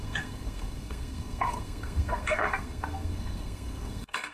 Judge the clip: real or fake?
fake